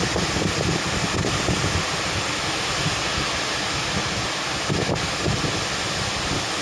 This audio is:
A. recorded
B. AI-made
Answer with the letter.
A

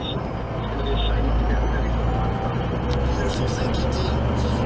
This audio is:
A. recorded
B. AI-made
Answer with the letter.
A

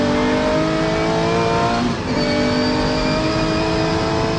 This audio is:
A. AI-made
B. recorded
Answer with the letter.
B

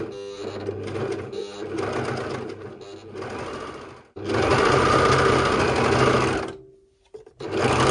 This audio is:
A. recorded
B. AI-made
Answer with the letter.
A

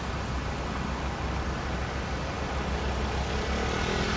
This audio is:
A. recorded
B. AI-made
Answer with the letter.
A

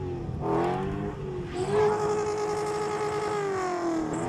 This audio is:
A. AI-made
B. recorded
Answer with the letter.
B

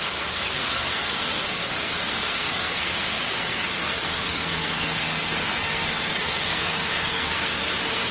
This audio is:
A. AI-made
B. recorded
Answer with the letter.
A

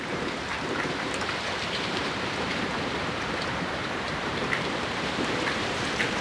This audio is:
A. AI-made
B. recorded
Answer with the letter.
A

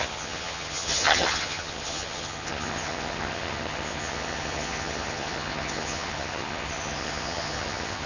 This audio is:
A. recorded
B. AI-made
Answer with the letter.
B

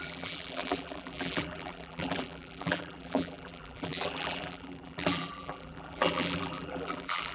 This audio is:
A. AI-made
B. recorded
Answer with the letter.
A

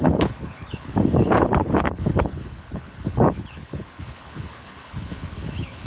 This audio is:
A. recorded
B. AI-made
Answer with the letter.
B